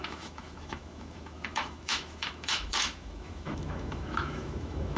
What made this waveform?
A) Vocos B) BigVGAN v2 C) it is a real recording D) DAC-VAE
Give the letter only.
D